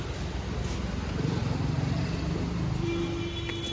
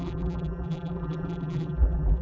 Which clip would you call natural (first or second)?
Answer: first